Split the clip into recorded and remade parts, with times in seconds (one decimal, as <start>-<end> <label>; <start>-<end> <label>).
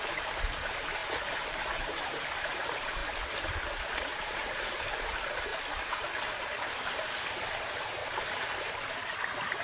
0.0-1.0 remade; 1.0-1.8 recorded; 1.8-3.0 remade; 3.0-4.0 recorded; 4.0-5.5 remade; 5.5-6.6 recorded; 6.6-8.0 remade; 8.0-9.6 recorded